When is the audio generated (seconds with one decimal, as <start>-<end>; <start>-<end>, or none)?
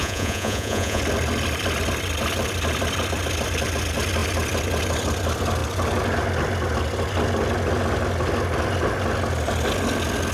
0.0-1.0